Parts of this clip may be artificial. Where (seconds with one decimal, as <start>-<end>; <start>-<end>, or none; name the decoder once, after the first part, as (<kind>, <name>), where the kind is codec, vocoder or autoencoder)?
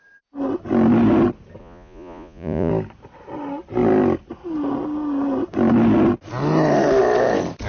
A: 1.6-2.7 (vocoder, Vocos)